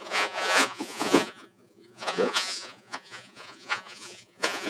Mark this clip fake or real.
fake